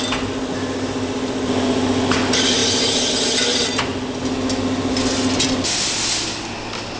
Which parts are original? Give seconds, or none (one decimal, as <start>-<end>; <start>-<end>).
0.0-7.0